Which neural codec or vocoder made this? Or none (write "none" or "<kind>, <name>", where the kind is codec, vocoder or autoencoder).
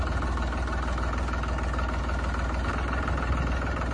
none